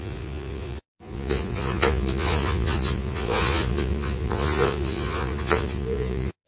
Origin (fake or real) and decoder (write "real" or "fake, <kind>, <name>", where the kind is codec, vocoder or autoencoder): fake, vocoder, Vocos